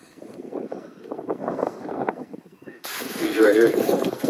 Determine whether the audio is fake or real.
fake